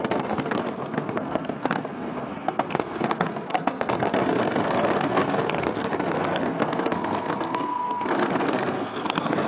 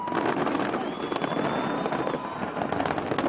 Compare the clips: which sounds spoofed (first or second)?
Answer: first